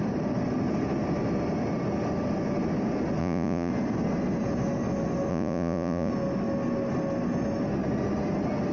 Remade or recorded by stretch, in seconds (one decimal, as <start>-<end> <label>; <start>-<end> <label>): 0.0-3.2 recorded; 3.2-3.7 remade; 3.7-5.3 recorded; 5.3-6.1 remade; 6.1-8.7 recorded